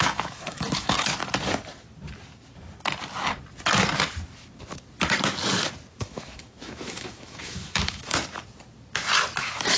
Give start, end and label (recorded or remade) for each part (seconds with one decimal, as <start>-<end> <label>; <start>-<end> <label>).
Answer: 0.0-1.2 remade; 1.2-5.9 recorded; 5.9-8.1 remade; 8.1-9.4 recorded; 9.4-9.8 remade